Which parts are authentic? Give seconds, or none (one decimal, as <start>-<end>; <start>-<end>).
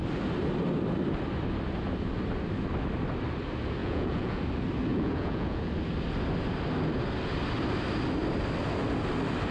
0.0-3.8; 4.4-4.9; 5.7-9.5